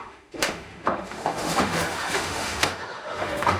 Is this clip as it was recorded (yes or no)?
no